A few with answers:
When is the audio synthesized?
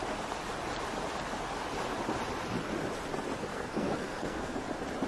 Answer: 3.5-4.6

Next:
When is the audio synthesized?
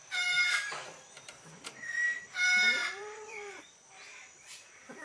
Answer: 2.8-3.9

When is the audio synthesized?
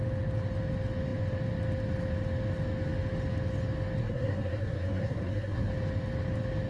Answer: 4.0-5.7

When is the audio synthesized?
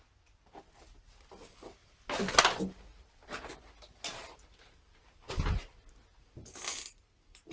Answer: none